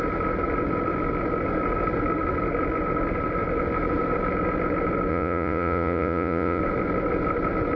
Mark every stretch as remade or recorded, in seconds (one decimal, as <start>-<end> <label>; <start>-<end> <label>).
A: 0.0-5.1 recorded; 5.1-6.6 remade; 6.6-7.8 recorded